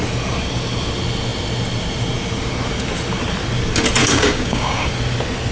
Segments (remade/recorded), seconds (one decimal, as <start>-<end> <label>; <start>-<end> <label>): 0.0-4.0 recorded; 4.0-4.9 remade; 4.9-5.5 recorded

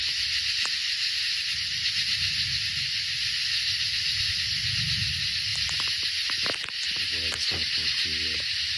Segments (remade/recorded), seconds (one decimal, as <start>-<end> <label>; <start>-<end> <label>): 0.0-8.8 recorded

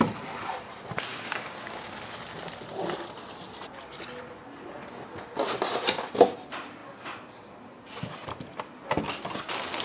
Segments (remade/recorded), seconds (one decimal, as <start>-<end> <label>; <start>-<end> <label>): 0.0-1.1 recorded; 1.1-1.9 remade; 1.9-9.8 recorded

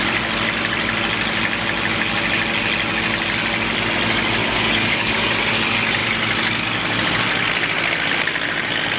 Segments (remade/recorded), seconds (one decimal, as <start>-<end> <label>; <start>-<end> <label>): 0.0-4.4 recorded; 4.4-5.1 remade; 5.1-9.0 recorded

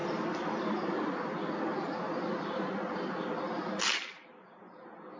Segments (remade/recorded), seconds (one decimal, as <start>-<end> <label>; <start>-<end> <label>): 0.0-5.2 recorded